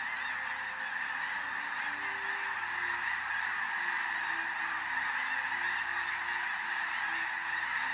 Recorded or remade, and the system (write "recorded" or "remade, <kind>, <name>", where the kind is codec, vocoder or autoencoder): recorded